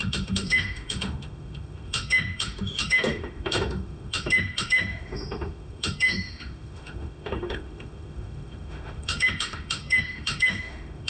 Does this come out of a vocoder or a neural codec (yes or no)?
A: yes